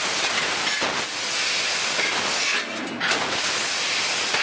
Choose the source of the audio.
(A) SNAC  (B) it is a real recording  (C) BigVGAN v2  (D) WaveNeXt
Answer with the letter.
B